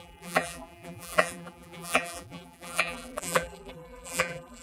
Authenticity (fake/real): fake